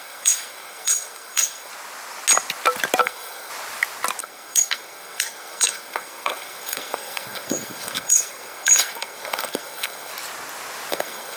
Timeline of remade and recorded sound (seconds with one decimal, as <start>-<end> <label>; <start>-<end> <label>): 0.0-1.7 remade; 1.7-3.0 recorded; 3.0-3.5 remade; 3.5-4.2 recorded; 4.2-10.1 remade; 10.1-10.9 recorded; 10.9-11.4 remade